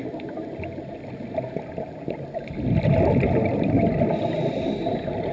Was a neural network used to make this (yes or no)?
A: no